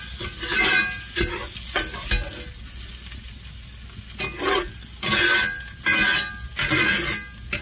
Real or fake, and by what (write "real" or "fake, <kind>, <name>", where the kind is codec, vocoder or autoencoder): real